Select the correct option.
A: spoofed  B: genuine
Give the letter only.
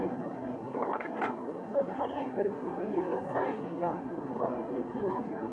A